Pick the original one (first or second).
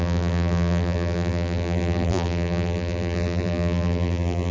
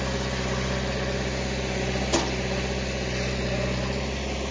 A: second